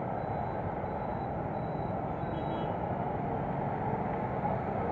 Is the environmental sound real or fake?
real